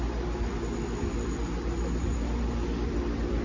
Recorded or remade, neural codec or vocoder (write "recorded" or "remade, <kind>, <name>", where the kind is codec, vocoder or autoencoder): recorded